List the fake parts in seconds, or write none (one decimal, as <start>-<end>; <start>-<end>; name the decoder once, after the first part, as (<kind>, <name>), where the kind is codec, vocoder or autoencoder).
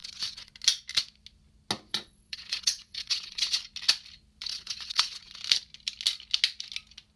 0.0-0.5 (vocoder, WaveNeXt); 1.9-3.6; 4.5-5.4